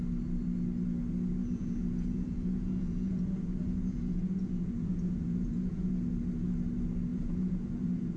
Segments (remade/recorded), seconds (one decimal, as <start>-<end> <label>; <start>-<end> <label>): 0.0-1.4 recorded; 1.4-6.2 remade; 6.2-7.1 recorded; 7.1-8.2 remade